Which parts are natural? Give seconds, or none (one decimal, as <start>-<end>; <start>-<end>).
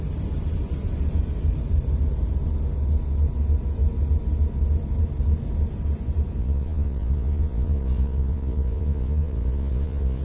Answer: 0.0-6.4